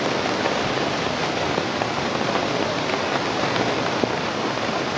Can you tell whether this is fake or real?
real